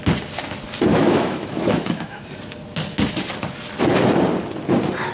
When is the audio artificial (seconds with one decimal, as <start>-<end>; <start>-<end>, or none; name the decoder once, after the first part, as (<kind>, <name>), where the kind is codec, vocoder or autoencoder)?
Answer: 0.9-2.3 (autoencoder, DAC-VAE)